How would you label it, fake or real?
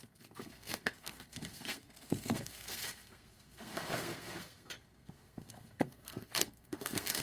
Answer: fake